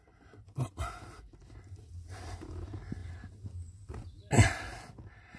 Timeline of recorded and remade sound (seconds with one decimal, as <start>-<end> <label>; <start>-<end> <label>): 0.0-5.4 recorded